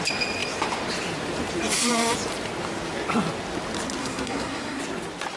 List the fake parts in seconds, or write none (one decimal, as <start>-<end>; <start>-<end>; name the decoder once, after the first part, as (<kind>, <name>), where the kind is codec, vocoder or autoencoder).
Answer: 4.0-4.8 (codec, SNAC)